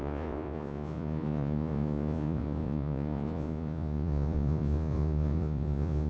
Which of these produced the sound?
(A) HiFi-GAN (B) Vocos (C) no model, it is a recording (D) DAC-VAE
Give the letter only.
B